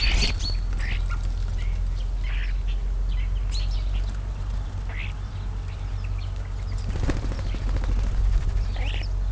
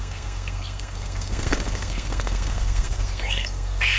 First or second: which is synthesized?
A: second